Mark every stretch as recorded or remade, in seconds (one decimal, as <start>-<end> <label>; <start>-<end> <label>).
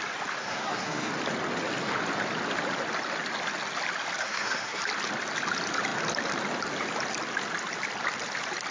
0.0-0.4 recorded; 0.4-1.1 remade; 1.1-4.2 recorded; 4.2-4.8 remade; 4.8-8.7 recorded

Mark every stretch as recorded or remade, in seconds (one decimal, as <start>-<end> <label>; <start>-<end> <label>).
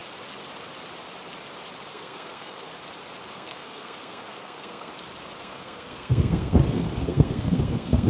0.0-1.9 recorded; 1.9-2.7 remade; 2.7-3.3 recorded; 3.3-4.9 remade; 4.9-5.4 recorded; 5.4-8.1 remade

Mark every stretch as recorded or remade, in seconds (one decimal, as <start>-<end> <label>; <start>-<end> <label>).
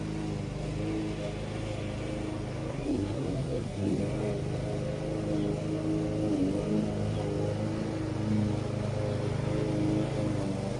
0.0-2.7 recorded; 2.7-4.0 remade; 4.0-10.8 recorded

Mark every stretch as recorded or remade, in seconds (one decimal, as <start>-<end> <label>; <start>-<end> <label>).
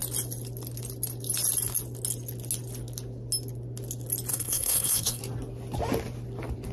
0.0-4.3 recorded; 4.3-5.2 remade; 5.2-6.7 recorded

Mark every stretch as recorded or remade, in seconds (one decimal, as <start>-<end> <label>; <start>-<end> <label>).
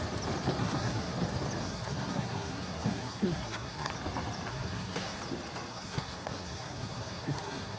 0.0-0.6 recorded; 0.6-1.1 remade; 1.1-1.6 recorded; 1.6-3.9 remade; 3.9-4.5 recorded; 4.5-5.2 remade; 5.2-5.7 recorded; 5.7-7.8 remade